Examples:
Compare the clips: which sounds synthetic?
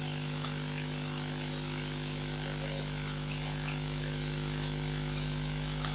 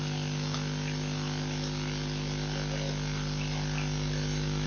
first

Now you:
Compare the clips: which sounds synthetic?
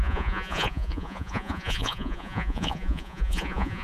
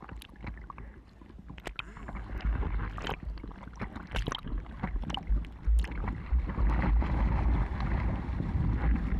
first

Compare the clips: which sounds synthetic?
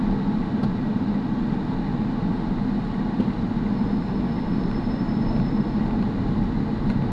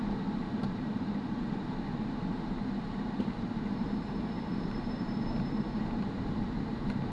second